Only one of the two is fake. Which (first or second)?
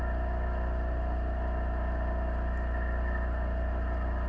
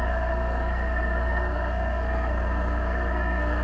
second